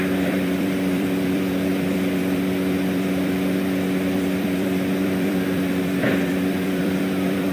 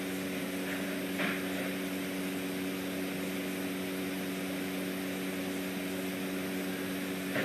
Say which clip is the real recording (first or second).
second